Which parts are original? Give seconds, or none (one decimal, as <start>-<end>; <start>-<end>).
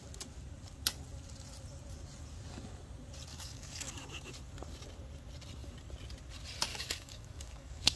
0.0-3.3; 3.9-6.7